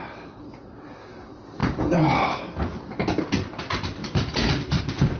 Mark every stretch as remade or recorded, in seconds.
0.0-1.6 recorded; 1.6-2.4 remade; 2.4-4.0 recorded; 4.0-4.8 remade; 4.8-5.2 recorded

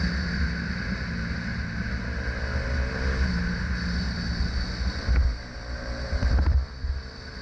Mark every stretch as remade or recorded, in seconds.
0.0-1.5 remade; 1.5-5.8 recorded; 5.8-6.2 remade; 6.2-7.4 recorded

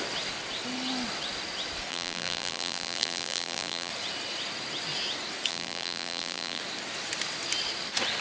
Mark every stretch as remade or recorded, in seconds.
0.0-1.9 recorded; 1.9-3.9 remade; 3.9-5.5 recorded; 5.5-6.6 remade; 6.6-8.2 recorded

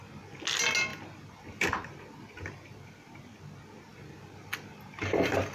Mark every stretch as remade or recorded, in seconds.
0.0-0.9 recorded; 0.9-2.9 remade; 2.9-3.9 recorded; 3.9-4.8 remade; 4.8-5.5 recorded

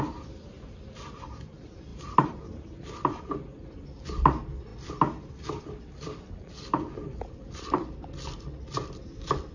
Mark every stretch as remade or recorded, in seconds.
0.0-1.9 recorded; 1.9-2.5 remade; 2.5-9.5 recorded

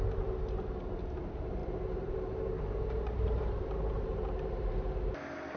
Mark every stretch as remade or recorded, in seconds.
0.0-1.6 recorded; 1.6-5.0 remade; 5.0-5.6 recorded